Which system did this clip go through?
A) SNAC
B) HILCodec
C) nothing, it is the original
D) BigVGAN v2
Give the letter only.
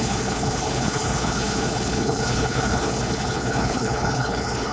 B